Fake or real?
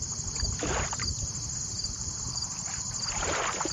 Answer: fake